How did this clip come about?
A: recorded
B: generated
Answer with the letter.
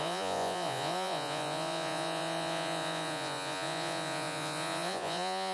B